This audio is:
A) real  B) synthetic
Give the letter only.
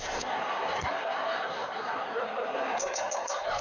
B